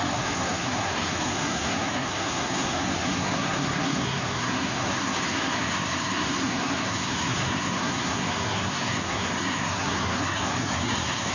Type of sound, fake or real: fake